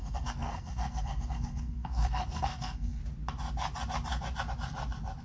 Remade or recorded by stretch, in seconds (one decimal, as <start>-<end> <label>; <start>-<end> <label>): 0.0-3.0 remade; 3.0-5.2 recorded